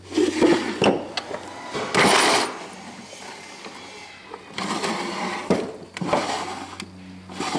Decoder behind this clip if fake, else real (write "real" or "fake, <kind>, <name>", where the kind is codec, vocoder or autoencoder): real